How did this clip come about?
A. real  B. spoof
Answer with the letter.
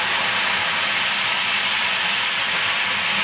A